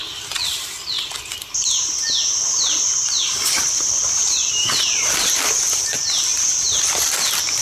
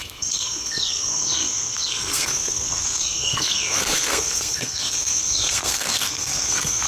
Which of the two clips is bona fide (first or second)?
first